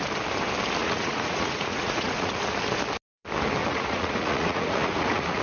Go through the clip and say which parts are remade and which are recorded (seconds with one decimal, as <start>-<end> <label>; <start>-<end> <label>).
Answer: 0.0-0.8 recorded; 0.8-2.3 remade; 2.3-3.6 recorded; 3.6-5.4 remade